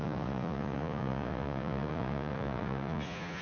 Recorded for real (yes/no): no